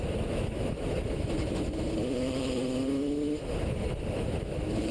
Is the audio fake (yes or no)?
yes